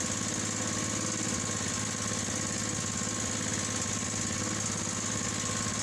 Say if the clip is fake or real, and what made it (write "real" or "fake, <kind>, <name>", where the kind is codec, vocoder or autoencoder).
real